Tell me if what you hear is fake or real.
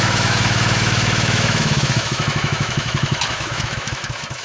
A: fake